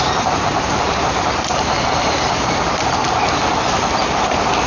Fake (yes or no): no